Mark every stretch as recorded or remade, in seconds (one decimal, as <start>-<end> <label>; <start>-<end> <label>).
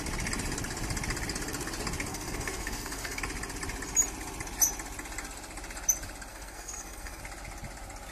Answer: 0.0-2.1 recorded; 2.1-3.2 remade; 3.2-6.3 recorded; 6.3-7.2 remade; 7.2-8.1 recorded